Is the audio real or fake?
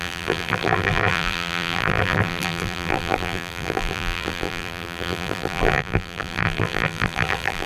fake